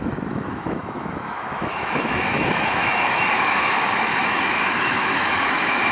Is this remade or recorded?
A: remade